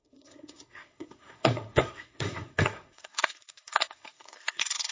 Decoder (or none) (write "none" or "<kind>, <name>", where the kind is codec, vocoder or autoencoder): codec, SNAC